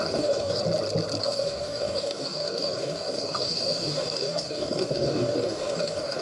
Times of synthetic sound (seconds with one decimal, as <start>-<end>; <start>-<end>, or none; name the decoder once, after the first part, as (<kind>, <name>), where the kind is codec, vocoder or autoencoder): 0.0-0.6 (codec, DAC); 1.2-6.2